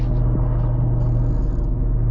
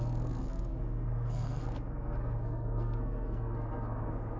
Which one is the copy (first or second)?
second